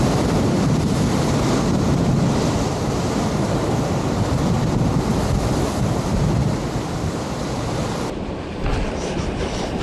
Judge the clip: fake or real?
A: real